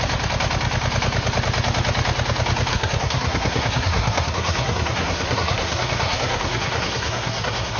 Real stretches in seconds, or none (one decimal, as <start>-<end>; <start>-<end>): 0.0-2.7